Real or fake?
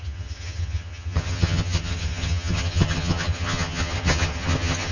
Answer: fake